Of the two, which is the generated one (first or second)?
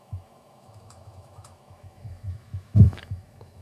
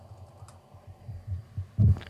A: first